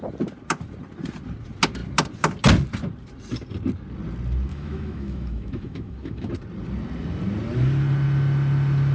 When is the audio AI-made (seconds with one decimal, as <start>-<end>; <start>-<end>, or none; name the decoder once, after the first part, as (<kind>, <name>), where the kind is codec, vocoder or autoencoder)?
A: 4.5-6.3 (autoencoder, DAC-VAE)